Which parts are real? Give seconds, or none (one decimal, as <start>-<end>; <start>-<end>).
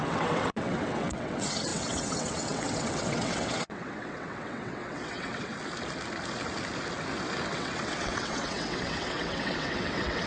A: 5.5-7.5